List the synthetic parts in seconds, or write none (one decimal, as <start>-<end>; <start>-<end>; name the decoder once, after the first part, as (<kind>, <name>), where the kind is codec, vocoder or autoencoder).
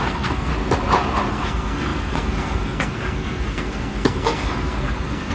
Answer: 0.0-0.5 (codec, SNAC); 1.3-5.3